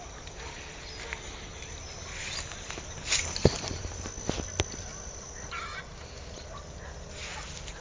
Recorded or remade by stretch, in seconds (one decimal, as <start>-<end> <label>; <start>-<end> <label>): 0.0-1.5 recorded; 1.5-3.8 remade; 3.8-7.8 recorded